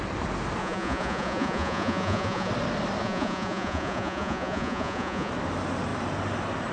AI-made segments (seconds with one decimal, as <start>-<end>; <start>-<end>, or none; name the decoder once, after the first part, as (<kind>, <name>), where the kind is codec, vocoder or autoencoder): 0.6-2.5 (vocoder, Vocos); 3.0-5.3

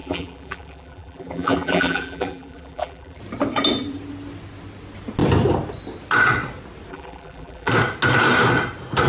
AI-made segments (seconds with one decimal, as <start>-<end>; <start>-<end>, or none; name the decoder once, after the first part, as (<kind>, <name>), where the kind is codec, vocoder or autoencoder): 0.0-3.2 (vocoder, BigVGAN v2); 6.9-7.7

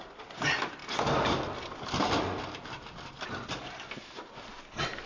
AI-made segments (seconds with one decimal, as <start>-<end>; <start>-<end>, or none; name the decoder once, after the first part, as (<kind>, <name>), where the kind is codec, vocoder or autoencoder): none

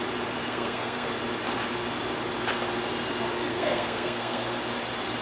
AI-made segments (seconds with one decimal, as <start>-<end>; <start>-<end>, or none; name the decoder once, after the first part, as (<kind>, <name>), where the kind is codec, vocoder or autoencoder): 0.4-1.2 (codec, SNAC); 3.5-4.6

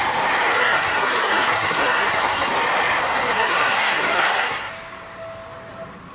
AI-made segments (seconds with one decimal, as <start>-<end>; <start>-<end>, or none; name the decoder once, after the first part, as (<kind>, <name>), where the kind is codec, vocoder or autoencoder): 0.6-2.5 (codec, SNAC); 3.0-4.7

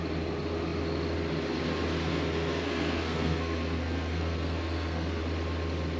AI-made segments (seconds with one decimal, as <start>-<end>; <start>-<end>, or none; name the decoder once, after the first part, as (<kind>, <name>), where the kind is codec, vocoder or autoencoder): 2.1-5.2 (codec, SNAC)